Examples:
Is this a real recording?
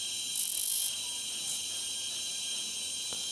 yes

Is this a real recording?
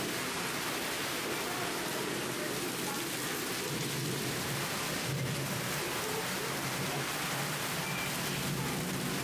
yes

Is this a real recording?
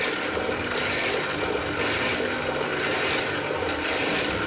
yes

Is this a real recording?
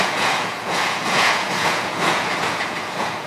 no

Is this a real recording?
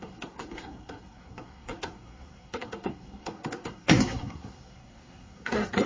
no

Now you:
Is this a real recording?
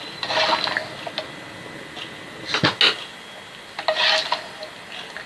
yes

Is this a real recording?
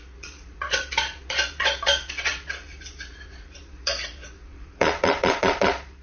no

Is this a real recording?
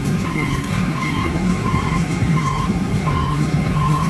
no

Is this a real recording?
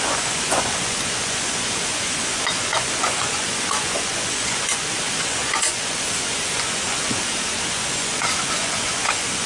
no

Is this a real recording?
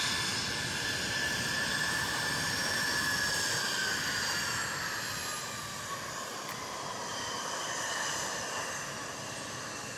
yes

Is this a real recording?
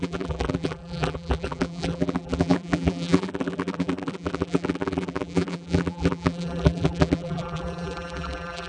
no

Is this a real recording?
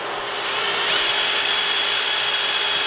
no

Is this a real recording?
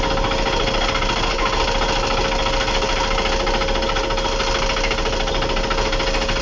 yes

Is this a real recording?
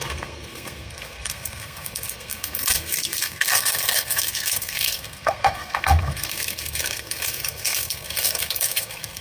no